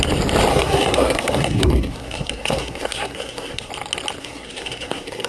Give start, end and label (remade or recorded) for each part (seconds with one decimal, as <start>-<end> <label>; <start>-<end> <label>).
0.0-0.5 recorded; 0.5-3.7 remade; 3.7-4.2 recorded; 4.2-5.3 remade